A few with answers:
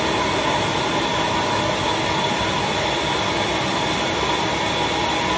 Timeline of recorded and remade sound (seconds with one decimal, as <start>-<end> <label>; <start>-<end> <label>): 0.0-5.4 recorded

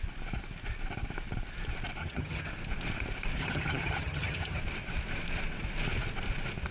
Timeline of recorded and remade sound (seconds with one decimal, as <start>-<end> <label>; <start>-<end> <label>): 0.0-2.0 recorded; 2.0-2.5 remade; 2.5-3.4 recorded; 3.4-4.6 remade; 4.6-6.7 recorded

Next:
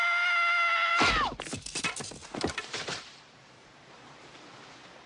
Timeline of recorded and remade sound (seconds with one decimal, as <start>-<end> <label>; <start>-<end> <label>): 0.0-2.2 recorded; 2.2-4.5 remade; 4.5-5.1 recorded

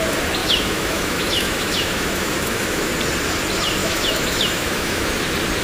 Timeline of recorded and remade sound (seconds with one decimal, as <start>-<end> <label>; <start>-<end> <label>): 0.0-0.4 recorded; 0.4-2.9 remade; 2.9-3.8 recorded; 3.8-5.1 remade; 5.1-5.6 recorded